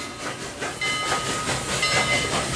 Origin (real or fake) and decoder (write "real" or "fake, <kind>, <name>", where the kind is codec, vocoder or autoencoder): real